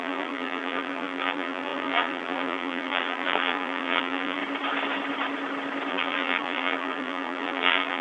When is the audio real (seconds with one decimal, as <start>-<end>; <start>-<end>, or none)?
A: 4.4-5.9